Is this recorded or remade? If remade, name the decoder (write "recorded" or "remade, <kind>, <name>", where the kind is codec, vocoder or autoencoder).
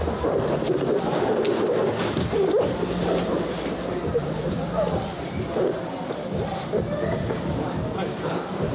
recorded